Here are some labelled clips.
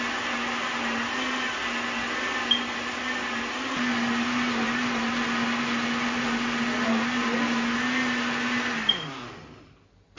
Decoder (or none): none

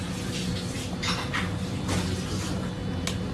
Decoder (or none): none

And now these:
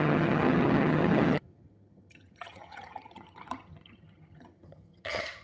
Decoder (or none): vocoder, HiFi-GAN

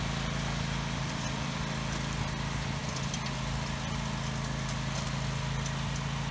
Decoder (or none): none